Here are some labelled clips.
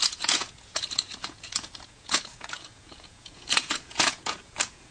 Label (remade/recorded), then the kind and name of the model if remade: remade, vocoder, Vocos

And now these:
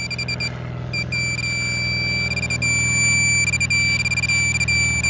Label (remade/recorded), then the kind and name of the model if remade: recorded